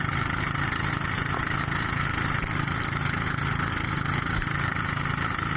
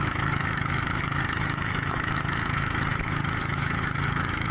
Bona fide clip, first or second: first